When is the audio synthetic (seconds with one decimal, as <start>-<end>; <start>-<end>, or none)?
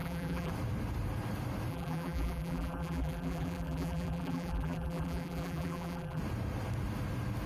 0.0-0.5; 1.7-6.2